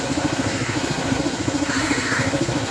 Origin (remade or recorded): remade